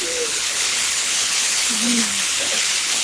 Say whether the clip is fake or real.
fake